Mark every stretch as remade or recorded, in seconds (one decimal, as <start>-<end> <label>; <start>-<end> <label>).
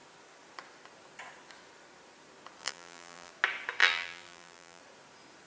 0.0-2.6 recorded; 2.6-3.3 remade; 3.3-3.8 recorded; 3.8-4.8 remade; 4.8-5.5 recorded